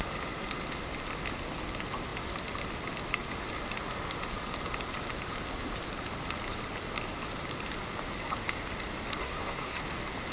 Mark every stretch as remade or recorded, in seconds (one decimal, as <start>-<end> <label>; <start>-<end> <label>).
0.0-9.2 recorded; 9.2-9.8 remade; 9.8-10.3 recorded